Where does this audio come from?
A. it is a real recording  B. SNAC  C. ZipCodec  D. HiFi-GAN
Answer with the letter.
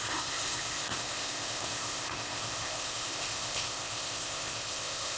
C